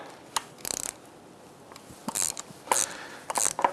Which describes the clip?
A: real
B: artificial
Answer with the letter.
A